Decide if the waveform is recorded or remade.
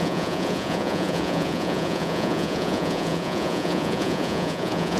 remade